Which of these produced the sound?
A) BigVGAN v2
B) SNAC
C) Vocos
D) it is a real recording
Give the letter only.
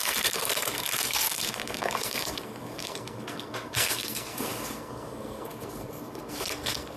B